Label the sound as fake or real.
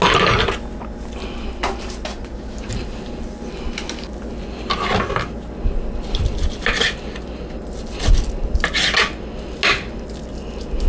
real